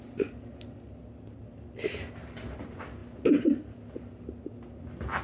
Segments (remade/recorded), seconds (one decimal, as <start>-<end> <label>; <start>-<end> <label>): 0.0-5.2 recorded